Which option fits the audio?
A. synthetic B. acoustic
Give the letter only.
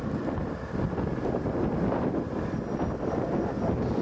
B